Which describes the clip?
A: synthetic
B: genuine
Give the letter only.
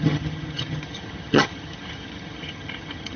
A